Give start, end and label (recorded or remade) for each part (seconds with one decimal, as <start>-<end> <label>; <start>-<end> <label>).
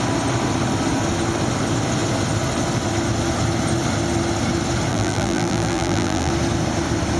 0.0-4.9 recorded; 4.9-6.3 remade; 6.3-7.2 recorded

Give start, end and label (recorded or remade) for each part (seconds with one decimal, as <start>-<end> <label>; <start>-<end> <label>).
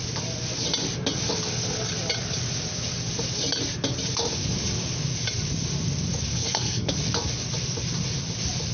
0.0-6.3 recorded; 6.3-6.9 remade; 6.9-8.7 recorded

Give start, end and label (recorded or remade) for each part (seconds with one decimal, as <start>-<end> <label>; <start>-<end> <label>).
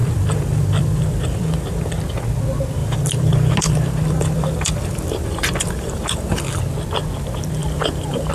0.0-1.9 remade; 1.9-2.8 recorded; 2.8-6.6 remade; 6.6-7.6 recorded; 7.6-8.3 remade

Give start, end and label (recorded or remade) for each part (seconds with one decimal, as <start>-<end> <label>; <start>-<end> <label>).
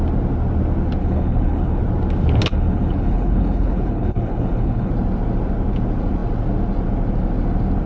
0.0-1.0 recorded; 1.0-1.8 remade; 1.8-2.5 recorded; 2.5-4.9 remade; 4.9-7.9 recorded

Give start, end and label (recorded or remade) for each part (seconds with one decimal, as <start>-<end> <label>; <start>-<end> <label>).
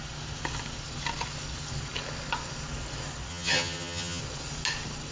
0.0-3.3 recorded; 3.3-4.2 remade; 4.2-5.1 recorded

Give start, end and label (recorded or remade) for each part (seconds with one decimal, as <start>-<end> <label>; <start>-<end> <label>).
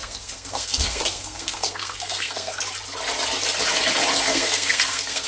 0.0-2.6 remade; 2.6-4.3 recorded; 4.3-5.3 remade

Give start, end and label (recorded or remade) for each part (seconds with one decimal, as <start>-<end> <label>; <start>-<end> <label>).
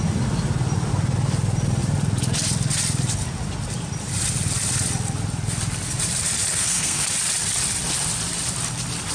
0.0-6.5 recorded; 6.5-7.1 remade; 7.1-9.1 recorded